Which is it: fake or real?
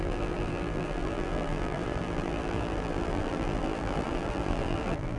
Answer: fake